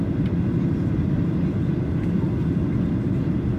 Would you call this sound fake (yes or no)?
no